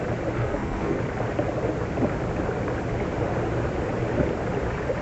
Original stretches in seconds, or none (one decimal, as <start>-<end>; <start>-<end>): 0.0-0.4; 1.0-5.0